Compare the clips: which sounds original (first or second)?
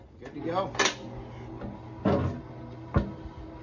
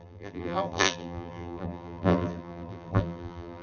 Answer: first